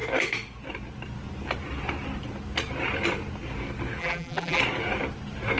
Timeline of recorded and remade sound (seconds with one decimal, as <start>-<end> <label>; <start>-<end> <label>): 0.0-4.0 recorded; 4.0-4.6 remade; 4.6-5.6 recorded